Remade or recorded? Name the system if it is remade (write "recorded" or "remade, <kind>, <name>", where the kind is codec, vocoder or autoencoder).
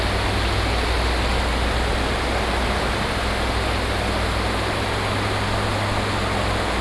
recorded